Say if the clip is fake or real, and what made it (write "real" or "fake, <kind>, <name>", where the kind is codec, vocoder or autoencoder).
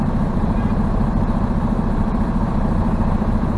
fake, vocoder, BigVGAN v2